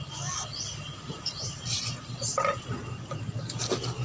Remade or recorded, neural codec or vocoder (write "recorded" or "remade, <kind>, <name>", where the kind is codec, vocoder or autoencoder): recorded